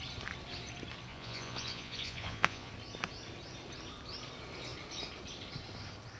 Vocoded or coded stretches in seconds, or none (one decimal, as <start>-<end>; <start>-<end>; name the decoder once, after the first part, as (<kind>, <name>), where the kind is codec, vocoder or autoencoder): 1.1-2.7 (vocoder, Vocos)